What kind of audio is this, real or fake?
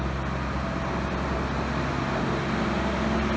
real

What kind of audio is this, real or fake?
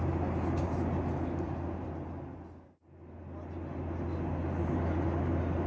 real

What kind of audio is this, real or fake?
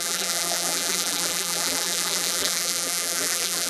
fake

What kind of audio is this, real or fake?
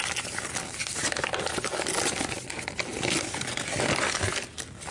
real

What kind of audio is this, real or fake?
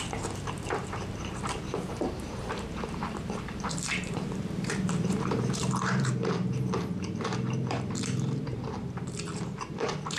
fake